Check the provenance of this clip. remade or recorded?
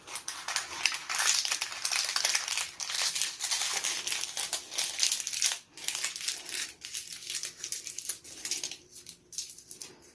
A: recorded